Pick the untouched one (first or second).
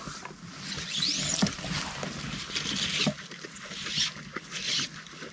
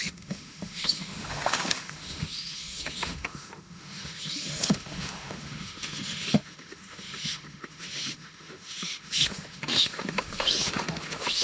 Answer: first